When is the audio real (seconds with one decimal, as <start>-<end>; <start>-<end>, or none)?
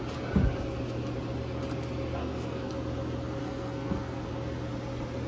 0.0-2.2; 2.7-3.4; 4.3-5.3